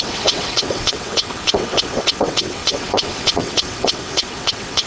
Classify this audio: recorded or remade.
remade